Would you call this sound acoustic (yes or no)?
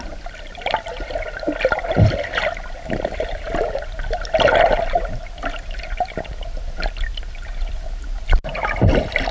yes